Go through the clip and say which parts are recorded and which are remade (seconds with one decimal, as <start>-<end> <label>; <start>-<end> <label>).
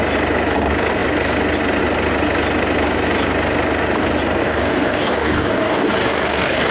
0.0-4.4 recorded; 4.4-6.7 remade